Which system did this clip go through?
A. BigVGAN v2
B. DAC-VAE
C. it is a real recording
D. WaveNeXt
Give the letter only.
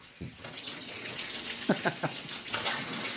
D